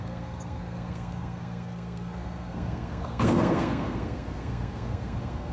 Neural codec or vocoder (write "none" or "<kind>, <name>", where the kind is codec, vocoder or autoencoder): codec, SNAC